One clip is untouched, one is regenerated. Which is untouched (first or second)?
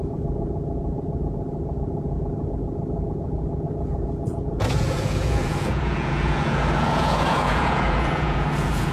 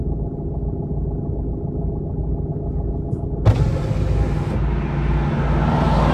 second